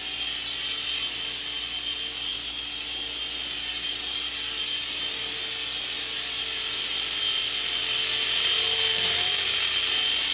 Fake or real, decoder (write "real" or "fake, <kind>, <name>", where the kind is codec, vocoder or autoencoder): real